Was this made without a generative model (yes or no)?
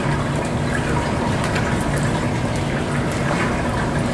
yes